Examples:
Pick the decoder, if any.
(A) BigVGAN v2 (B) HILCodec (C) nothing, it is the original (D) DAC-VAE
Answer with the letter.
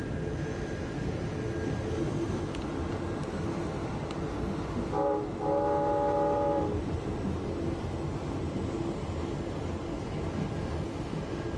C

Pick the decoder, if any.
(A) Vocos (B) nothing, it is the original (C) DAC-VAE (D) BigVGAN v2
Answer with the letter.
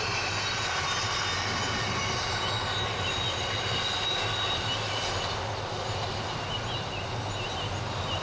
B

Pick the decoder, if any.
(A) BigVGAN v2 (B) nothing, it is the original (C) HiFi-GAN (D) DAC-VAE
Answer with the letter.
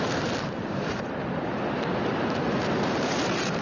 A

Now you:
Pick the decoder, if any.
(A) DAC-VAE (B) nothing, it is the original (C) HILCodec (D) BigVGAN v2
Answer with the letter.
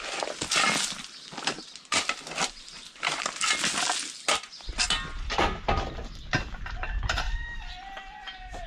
B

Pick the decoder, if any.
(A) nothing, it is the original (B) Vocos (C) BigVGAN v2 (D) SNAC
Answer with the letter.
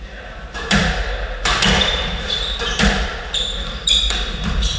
C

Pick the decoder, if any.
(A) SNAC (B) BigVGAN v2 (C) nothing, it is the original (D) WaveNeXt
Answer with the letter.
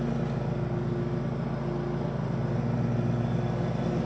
C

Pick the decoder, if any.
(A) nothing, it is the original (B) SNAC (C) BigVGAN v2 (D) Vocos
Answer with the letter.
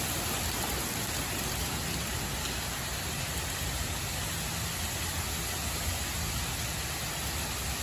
A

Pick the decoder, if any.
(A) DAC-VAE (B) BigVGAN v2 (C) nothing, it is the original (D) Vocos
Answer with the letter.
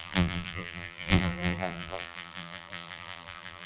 B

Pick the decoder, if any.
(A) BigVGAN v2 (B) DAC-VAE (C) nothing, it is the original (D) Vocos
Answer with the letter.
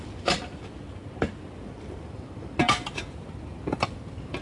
A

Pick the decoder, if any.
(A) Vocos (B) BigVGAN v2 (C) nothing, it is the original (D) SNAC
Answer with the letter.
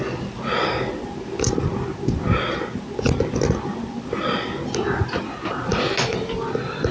C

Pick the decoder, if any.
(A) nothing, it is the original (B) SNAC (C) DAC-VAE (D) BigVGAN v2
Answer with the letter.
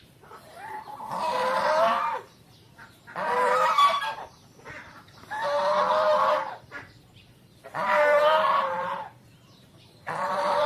D